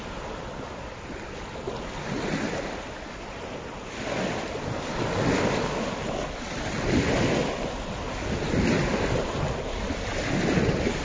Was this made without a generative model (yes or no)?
yes